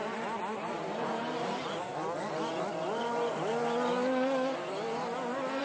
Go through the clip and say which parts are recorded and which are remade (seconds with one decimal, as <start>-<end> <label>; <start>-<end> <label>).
0.0-5.6 recorded

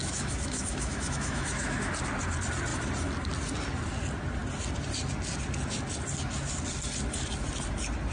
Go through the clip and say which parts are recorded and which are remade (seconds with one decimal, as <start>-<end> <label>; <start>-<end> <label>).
0.0-1.9 remade; 1.9-8.1 recorded

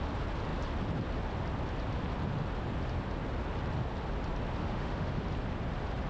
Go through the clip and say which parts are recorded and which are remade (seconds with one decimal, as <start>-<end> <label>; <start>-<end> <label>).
0.0-4.6 recorded; 4.6-5.2 remade; 5.2-6.1 recorded

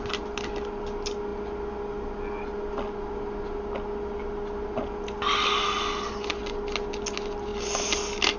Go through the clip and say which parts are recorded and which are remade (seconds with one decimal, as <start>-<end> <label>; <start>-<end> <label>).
0.0-8.4 recorded

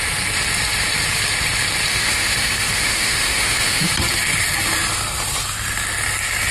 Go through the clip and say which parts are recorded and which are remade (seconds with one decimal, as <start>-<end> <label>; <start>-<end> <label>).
0.0-1.9 recorded; 1.9-3.9 remade; 3.9-6.5 recorded

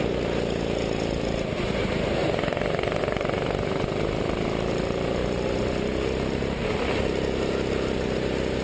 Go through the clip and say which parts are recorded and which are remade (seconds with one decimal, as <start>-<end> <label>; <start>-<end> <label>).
0.0-8.6 recorded

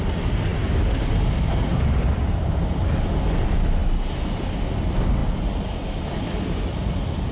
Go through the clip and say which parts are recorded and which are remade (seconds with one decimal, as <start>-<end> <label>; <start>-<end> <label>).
0.0-7.3 recorded

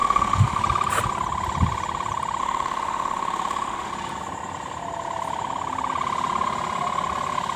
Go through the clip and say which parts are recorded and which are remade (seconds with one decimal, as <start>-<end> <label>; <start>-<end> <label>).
0.0-0.6 remade; 0.6-2.4 recorded; 2.4-3.9 remade; 3.9-7.6 recorded